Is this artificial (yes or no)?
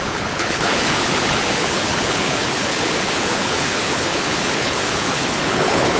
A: yes